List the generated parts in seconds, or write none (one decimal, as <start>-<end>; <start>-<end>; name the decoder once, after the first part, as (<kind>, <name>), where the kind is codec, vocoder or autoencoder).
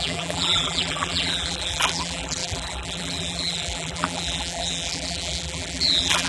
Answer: 0.0-6.3 (vocoder, BigVGAN v2)